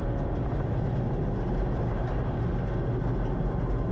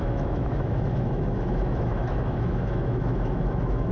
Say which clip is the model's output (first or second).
second